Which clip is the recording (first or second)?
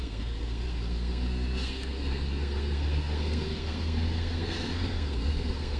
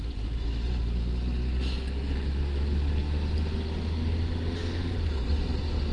second